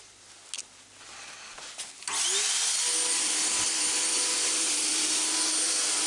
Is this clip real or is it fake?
real